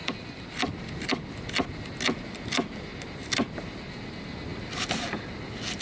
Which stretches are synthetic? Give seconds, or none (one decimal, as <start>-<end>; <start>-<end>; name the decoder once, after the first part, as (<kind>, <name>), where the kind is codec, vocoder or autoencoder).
none